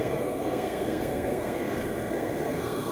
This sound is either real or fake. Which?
fake